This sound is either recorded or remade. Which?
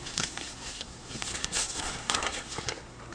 remade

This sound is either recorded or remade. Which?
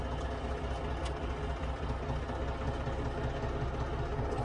recorded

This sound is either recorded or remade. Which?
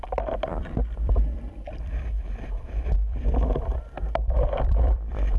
remade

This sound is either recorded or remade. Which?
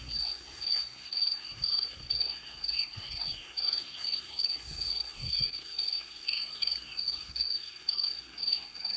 remade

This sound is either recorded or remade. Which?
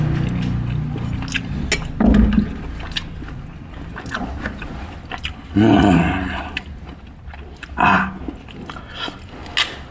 recorded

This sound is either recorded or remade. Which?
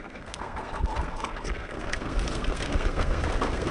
remade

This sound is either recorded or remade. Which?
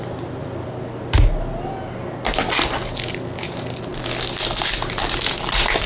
recorded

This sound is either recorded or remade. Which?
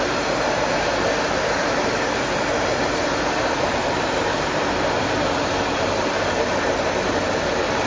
remade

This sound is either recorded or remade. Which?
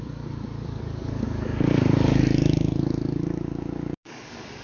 remade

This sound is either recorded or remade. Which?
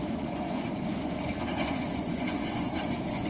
remade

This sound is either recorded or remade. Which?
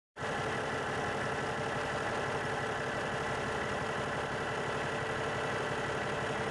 remade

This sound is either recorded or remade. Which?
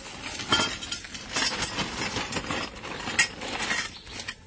recorded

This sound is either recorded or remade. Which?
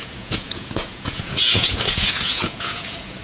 remade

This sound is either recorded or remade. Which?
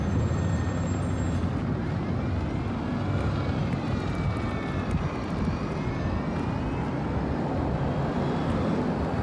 recorded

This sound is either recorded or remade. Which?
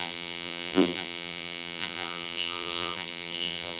remade